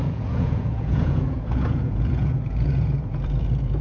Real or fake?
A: fake